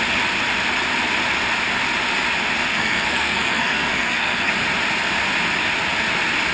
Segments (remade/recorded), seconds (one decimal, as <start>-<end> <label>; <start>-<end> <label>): 0.0-2.7 recorded; 2.7-4.5 remade; 4.5-6.5 recorded